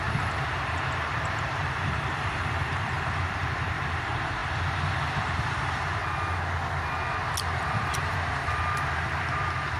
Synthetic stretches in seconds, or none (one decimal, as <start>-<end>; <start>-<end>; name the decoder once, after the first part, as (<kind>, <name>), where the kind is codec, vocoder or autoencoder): 0.0-6.0 (vocoder, BigVGAN v2); 7.7-9.8